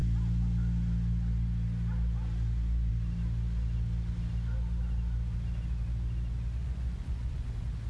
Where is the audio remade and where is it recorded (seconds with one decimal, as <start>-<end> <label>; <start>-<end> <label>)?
0.0-6.6 recorded; 6.6-7.5 remade; 7.5-7.9 recorded